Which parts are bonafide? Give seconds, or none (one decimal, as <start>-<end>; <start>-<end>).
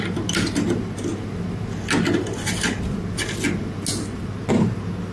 0.0-5.1